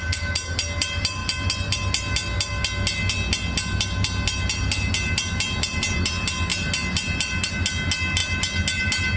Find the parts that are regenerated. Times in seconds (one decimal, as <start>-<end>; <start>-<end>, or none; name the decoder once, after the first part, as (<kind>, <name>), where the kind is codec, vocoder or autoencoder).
none